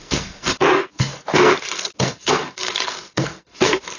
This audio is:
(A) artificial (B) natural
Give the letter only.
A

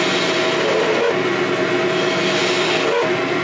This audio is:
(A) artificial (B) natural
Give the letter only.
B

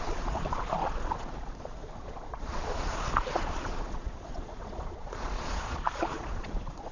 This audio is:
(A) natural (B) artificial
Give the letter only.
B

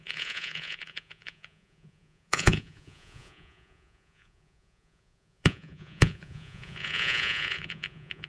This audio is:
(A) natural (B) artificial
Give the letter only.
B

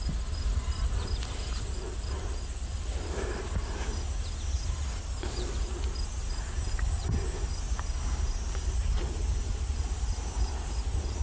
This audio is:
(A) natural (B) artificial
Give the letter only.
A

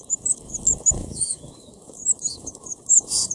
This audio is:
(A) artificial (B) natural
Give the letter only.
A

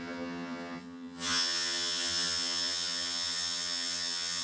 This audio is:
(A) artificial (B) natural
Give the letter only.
A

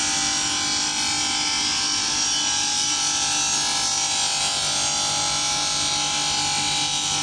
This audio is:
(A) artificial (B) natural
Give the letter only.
B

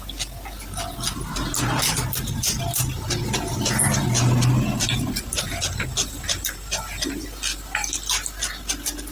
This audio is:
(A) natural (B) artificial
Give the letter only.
A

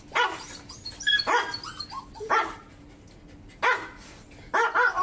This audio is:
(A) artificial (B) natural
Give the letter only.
B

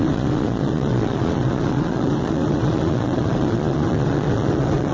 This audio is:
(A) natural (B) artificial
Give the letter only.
B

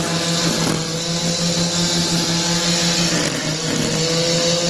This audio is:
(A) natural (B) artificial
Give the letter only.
A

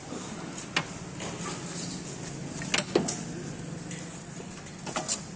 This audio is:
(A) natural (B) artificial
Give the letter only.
A